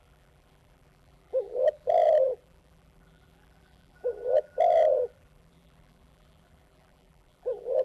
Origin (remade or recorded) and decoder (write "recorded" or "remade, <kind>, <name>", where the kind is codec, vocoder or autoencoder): remade, vocoder, BigVGAN v2